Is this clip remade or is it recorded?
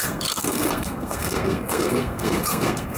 remade